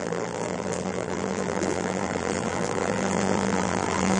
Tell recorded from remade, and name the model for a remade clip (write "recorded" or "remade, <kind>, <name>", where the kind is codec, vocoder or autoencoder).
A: remade, vocoder, BigVGAN v2